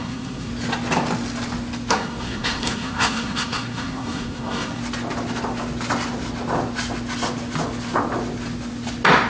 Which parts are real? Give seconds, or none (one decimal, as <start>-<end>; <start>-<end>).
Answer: 0.5-1.9; 4.8-9.3